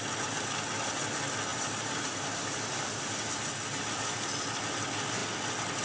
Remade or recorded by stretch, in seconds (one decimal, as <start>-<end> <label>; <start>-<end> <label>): 0.0-1.5 recorded; 1.5-2.4 remade; 2.4-5.8 recorded